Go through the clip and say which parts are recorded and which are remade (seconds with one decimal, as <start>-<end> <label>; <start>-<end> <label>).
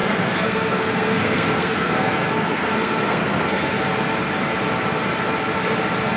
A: 0.0-3.7 remade; 3.7-6.2 recorded